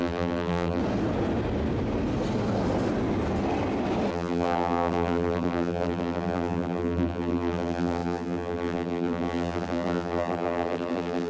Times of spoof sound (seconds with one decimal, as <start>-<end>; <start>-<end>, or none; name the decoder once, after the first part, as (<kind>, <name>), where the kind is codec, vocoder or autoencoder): 0.0-0.8 (vocoder, BigVGAN v2); 4.1-11.3